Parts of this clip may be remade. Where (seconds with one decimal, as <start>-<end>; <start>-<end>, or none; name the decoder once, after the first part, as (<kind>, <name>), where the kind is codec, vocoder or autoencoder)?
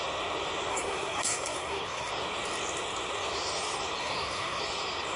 0.7-2.1 (codec, SNAC); 4.0-4.6